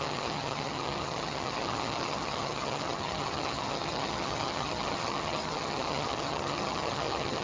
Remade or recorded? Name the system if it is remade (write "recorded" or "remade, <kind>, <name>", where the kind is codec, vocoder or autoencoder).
remade, vocoder, HiFi-GAN